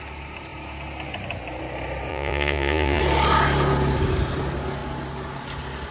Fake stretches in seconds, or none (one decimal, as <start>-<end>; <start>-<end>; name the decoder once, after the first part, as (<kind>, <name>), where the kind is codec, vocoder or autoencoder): 2.1-3.0 (vocoder, Vocos)